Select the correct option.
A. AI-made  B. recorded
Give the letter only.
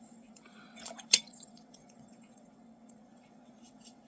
A